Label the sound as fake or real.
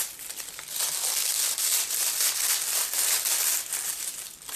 real